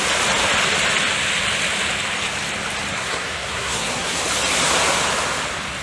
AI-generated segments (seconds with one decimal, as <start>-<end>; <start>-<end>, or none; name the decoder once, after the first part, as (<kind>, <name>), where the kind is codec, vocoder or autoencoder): 2.9-4.2 (codec, SNAC)